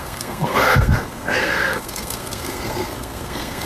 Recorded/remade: remade